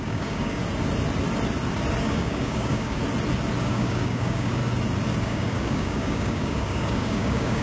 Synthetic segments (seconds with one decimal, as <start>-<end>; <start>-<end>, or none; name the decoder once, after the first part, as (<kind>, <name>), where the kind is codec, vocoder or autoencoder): 0.0-0.6 (codec, DAC); 2.0-3.0; 3.6-4.6; 5.2-7.6